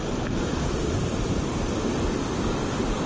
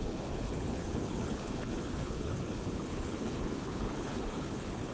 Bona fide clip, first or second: first